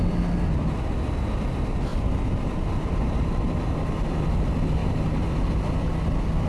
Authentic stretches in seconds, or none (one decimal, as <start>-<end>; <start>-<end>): 0.0-1.9; 3.9-4.8; 5.5-6.5